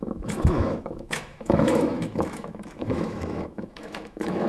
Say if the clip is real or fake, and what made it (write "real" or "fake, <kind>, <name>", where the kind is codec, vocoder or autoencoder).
fake, autoencoder, DAC-VAE